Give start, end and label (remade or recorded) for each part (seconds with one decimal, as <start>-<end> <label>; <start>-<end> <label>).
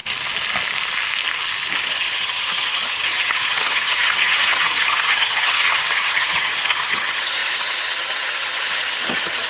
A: 0.0-1.9 recorded; 1.9-9.5 remade